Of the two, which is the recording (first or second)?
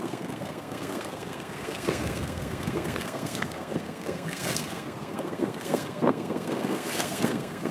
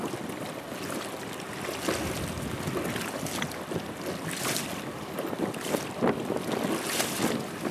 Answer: second